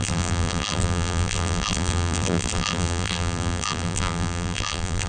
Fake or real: fake